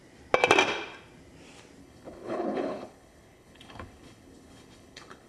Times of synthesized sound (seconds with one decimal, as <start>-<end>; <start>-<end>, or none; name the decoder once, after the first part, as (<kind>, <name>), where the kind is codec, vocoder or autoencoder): 1.8-5.3 (codec, HILCodec)

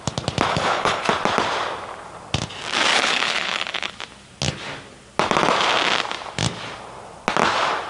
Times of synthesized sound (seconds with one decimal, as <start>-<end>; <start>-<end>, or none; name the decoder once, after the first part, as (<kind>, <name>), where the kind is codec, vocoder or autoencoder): 0.5-1.1 (codec, HILCodec); 2.9-3.9

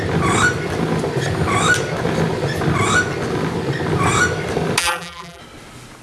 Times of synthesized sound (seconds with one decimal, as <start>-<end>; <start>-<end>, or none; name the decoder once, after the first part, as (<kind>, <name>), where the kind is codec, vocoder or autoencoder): 4.8-5.4 (vocoder, BigVGAN v2)

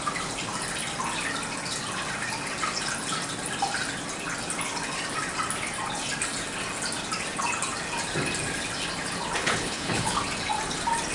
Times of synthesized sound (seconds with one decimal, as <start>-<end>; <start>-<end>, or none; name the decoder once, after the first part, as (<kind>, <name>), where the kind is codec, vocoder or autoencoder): 9.4-10.2 (codec, HILCodec)

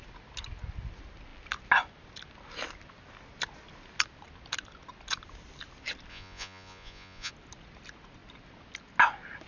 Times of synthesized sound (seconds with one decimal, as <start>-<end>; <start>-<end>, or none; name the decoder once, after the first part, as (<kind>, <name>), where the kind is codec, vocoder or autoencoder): 6.1-7.3 (vocoder, Vocos)